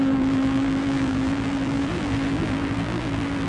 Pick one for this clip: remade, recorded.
remade